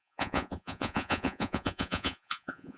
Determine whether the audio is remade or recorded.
remade